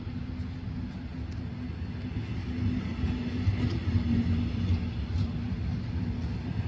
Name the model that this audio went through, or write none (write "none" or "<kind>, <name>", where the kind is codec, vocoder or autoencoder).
none